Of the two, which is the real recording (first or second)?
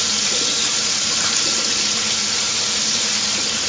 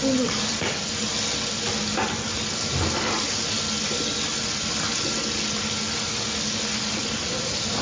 second